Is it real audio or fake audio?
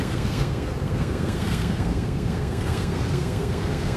fake